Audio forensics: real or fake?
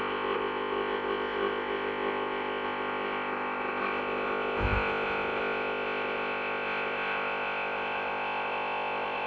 fake